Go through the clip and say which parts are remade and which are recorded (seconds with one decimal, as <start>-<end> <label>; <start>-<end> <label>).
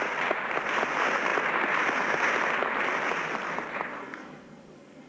0.0-4.0 recorded; 4.0-5.1 remade